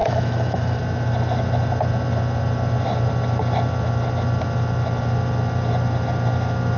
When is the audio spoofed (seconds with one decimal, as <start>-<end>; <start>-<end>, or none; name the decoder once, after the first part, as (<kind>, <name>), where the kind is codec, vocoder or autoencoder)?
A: 0.0-0.8 (autoencoder, DAC-VAE)